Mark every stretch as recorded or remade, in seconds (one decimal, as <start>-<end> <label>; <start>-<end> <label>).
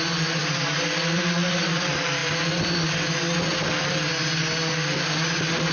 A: 0.0-0.4 recorded; 0.4-1.8 remade; 1.8-5.7 recorded